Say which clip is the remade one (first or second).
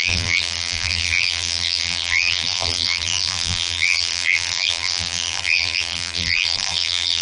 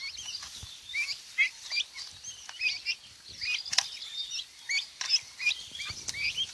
first